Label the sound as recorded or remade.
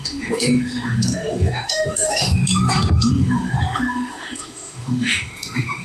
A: remade